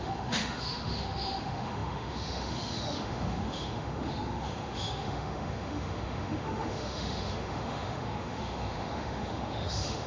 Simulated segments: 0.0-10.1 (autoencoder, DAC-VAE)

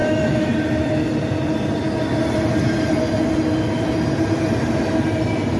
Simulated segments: 0.0-0.5 (autoencoder, DAC-VAE)

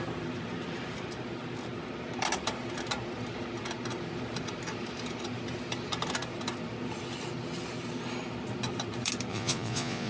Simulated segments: 9.3-10.1 (vocoder, Vocos)

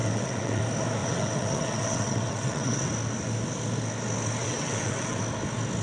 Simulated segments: 0.0-0.6 (vocoder, WaveNeXt); 1.0-2.9; 4.4-5.2

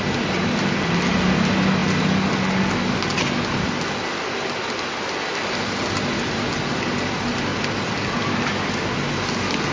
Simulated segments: none

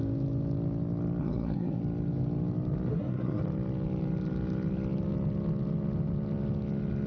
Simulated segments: 1.2-1.8 (codec, SNAC); 2.9-3.4

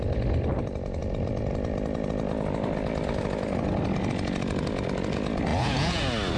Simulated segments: 5.5-6.0 (vocoder, Vocos)